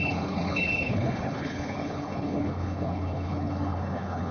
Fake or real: fake